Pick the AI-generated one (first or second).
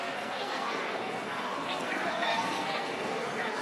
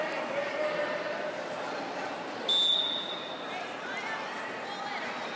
first